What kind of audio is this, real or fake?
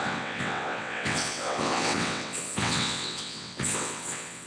fake